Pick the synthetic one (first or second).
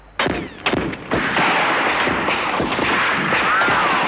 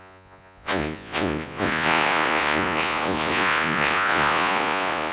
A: second